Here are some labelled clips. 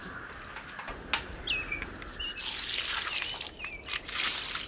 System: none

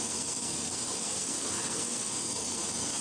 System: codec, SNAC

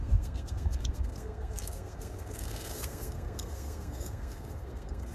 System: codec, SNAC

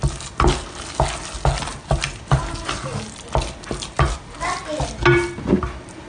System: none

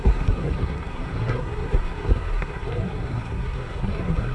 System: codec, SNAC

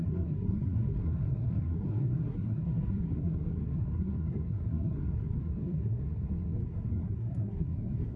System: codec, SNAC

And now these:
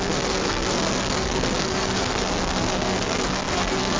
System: codec, SNAC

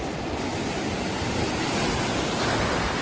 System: none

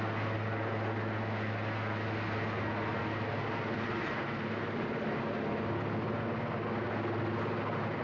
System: none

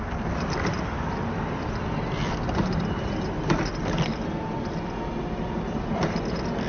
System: none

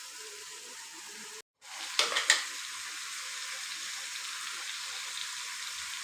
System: none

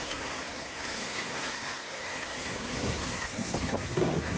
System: codec, SNAC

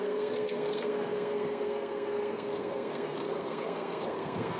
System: codec, SNAC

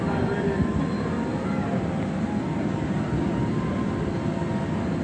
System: none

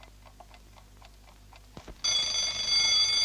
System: none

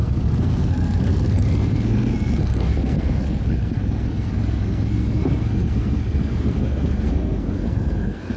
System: codec, SNAC